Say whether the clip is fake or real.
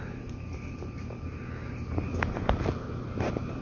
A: real